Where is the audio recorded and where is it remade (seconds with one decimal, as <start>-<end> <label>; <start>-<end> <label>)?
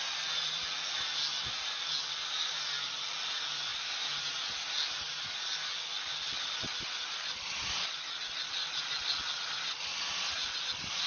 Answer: 0.0-11.1 recorded